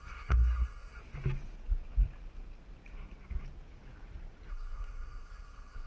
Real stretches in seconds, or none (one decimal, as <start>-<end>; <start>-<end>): 1.0-4.5